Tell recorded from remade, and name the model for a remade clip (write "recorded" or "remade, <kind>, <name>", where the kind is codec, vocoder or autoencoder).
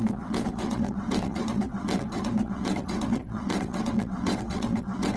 remade, vocoder, WaveNeXt